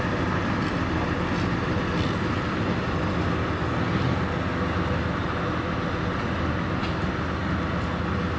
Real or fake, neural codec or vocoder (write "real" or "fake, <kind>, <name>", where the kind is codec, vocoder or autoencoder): real